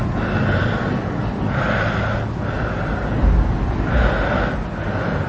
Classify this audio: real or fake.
real